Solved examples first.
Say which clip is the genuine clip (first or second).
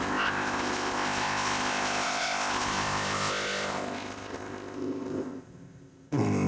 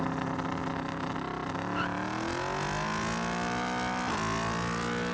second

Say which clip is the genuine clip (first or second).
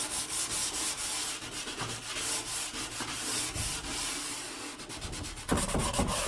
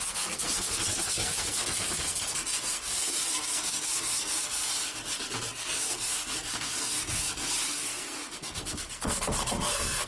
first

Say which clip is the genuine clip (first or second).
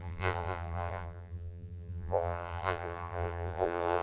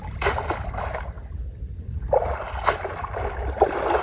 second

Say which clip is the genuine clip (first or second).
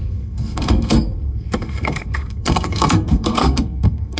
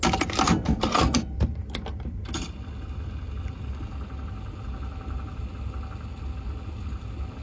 second